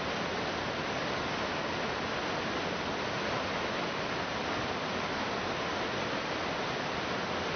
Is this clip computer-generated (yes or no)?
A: no